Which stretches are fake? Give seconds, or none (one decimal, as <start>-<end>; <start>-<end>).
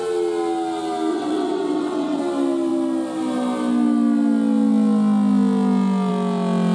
1.1-2.2